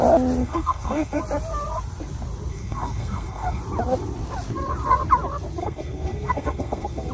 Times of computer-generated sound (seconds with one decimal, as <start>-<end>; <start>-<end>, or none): 0.4-1.2; 2.5-3.6; 5.6-7.1